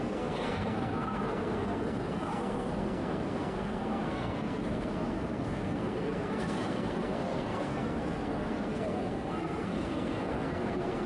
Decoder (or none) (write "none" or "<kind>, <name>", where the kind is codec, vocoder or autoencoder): codec, SNAC